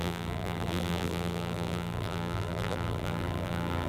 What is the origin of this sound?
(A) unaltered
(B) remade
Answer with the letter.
B